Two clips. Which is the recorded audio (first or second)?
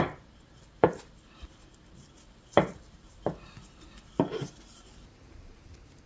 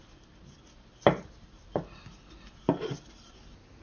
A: second